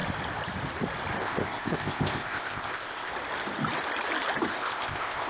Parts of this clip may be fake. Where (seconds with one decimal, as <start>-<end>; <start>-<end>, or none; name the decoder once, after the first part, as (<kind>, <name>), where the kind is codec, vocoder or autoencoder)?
1.2-3.1 (codec, ZipCodec); 4.5-5.3